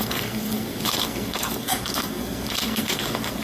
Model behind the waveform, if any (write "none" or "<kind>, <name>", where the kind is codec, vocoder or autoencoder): codec, SNAC